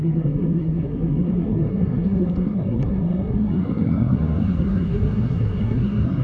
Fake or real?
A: fake